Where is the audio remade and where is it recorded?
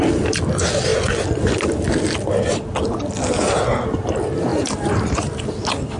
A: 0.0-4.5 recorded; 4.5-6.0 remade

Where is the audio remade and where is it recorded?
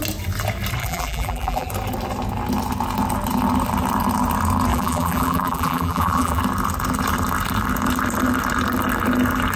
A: 0.0-0.8 recorded; 0.8-1.7 remade; 1.7-4.7 recorded; 4.7-6.4 remade; 6.4-9.6 recorded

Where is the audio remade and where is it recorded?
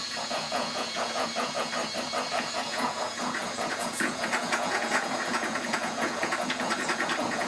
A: 0.0-1.7 remade; 1.7-2.3 recorded; 2.3-7.5 remade